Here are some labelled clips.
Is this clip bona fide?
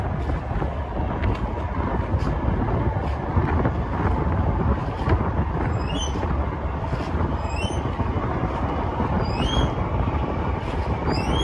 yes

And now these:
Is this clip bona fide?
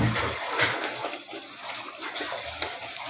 yes